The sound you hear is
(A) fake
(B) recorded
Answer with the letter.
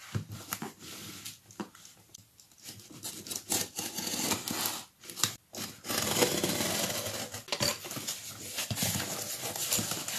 B